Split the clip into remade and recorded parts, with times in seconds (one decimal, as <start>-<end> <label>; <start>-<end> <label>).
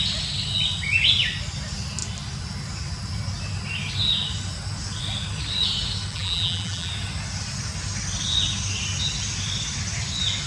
0.0-6.1 recorded; 6.1-6.9 remade; 6.9-10.5 recorded